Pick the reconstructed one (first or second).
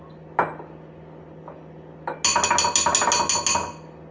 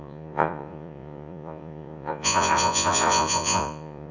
second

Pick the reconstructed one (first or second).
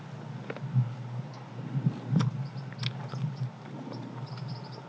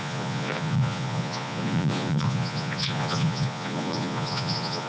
second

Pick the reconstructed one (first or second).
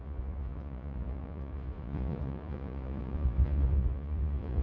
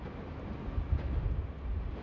first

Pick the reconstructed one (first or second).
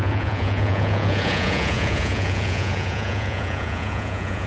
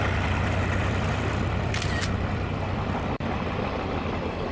first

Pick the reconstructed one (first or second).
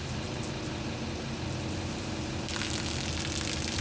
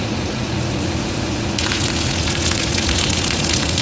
second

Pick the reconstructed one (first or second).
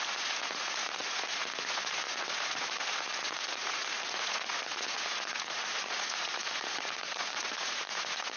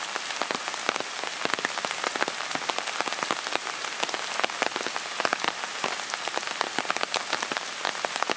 first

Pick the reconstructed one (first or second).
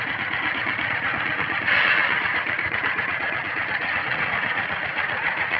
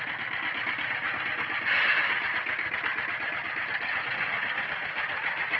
first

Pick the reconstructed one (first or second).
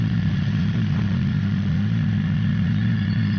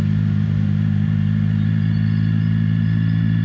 first